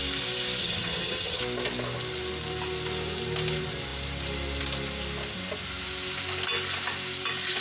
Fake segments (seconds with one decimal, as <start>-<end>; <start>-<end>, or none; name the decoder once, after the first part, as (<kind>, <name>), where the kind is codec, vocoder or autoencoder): 0.6-1.4 (vocoder, HiFi-GAN)